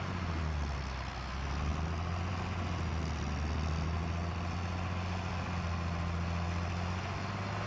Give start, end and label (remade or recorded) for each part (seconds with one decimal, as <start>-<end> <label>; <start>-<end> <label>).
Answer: 0.0-7.7 recorded